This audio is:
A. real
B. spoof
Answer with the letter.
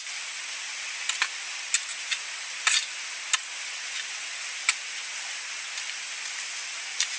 A